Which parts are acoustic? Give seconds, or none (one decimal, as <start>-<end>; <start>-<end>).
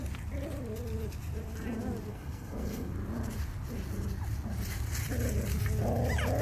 0.0-2.1; 2.9-6.4